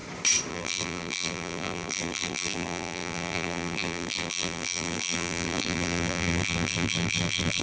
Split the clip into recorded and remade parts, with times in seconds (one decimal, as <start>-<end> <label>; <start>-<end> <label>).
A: 0.0-0.5 recorded; 0.5-7.6 remade